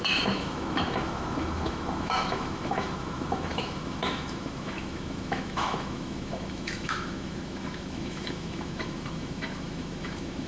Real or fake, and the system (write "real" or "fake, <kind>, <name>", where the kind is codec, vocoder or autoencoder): fake, autoencoder, DAC-VAE